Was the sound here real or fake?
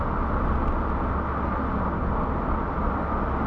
real